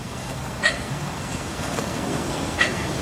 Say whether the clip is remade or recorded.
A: remade